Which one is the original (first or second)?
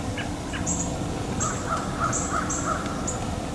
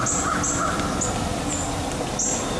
second